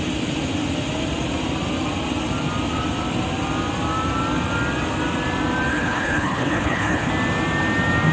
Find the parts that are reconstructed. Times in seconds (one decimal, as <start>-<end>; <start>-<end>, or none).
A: 5.7-7.1